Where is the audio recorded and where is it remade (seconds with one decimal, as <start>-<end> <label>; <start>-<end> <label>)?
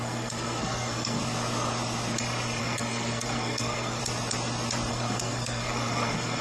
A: 0.0-1.2 remade; 1.2-2.6 recorded; 2.6-4.0 remade; 4.0-4.9 recorded; 4.9-6.4 remade